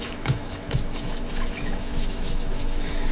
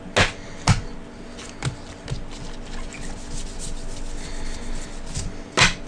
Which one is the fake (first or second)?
first